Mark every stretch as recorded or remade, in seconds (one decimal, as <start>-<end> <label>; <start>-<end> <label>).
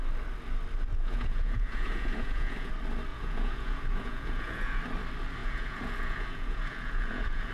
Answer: 0.0-0.9 recorded; 0.9-2.7 remade; 2.7-3.1 recorded; 3.1-4.8 remade; 4.8-5.4 recorded; 5.4-7.5 remade